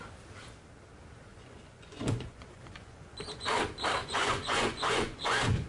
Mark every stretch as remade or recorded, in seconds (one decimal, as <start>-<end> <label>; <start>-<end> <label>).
0.0-1.3 recorded; 1.3-3.6 remade; 3.6-4.0 recorded; 4.0-5.7 remade